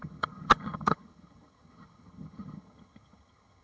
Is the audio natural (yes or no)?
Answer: no